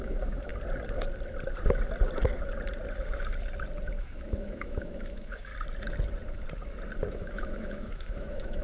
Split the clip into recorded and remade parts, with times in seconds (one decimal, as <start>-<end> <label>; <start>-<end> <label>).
0.0-0.5 remade; 0.5-4.0 recorded; 4.0-5.5 remade; 5.5-7.1 recorded; 7.1-8.6 remade